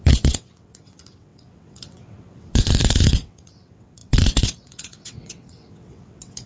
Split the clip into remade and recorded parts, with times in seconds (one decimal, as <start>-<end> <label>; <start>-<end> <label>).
0.0-6.5 remade